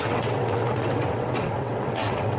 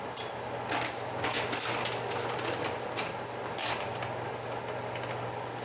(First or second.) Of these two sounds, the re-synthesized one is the first